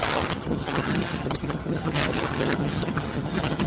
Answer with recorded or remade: remade